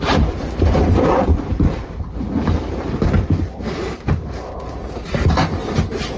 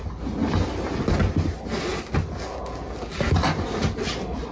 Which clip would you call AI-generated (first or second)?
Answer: first